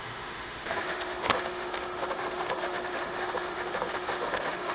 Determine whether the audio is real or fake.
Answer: fake